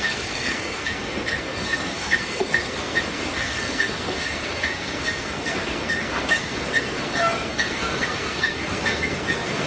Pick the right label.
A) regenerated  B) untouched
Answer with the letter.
A